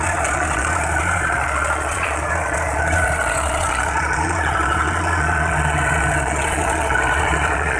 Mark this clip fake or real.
fake